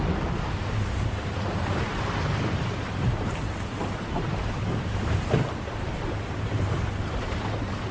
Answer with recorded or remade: remade